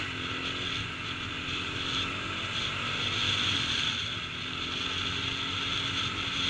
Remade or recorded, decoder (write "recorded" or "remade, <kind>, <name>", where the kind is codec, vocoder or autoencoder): recorded